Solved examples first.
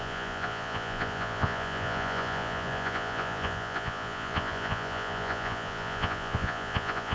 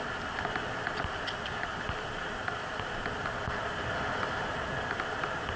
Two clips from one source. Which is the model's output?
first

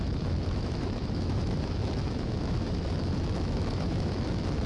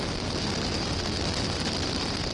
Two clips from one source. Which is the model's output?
first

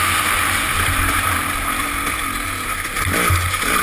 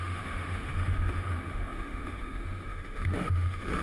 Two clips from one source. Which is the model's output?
second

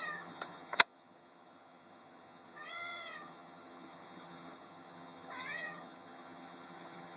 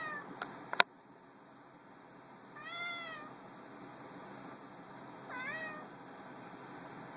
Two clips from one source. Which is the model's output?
first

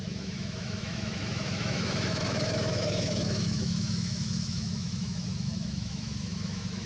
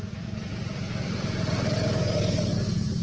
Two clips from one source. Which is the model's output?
first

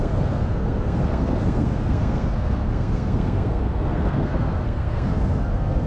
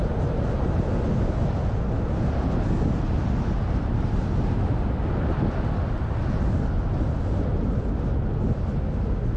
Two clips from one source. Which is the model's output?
first